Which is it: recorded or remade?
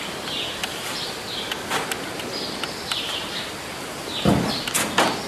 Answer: recorded